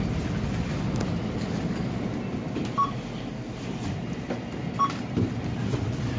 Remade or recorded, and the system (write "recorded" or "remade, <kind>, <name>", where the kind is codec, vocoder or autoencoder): recorded